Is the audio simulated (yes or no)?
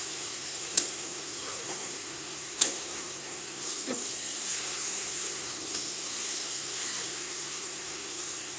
yes